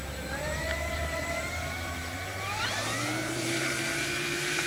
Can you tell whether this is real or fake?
fake